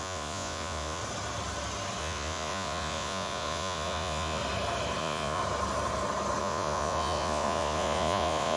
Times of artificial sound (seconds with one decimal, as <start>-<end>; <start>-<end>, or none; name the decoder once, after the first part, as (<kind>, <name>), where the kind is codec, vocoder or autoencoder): 0.0-1.0 (vocoder, Vocos); 2.0-4.4; 5.0-5.4; 6.4-8.6